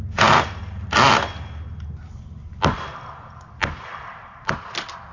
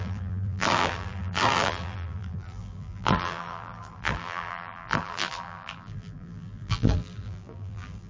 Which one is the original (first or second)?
first